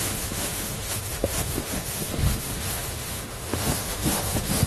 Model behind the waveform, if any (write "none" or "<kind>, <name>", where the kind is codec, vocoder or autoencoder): autoencoder, DAC-VAE